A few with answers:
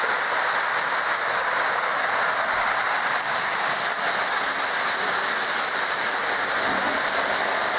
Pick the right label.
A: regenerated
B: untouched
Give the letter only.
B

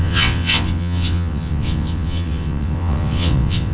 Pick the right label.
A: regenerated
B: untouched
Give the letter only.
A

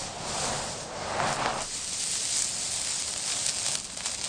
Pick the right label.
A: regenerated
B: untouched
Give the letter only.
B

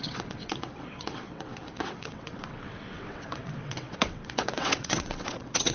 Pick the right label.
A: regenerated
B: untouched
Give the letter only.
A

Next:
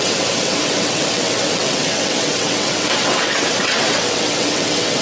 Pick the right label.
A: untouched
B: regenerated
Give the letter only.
B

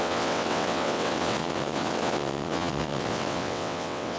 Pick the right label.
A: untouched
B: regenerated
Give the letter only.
B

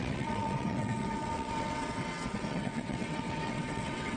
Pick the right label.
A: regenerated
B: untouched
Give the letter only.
A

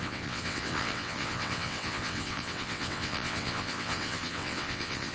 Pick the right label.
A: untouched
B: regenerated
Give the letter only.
B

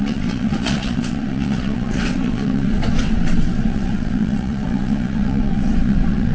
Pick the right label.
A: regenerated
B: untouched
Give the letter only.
A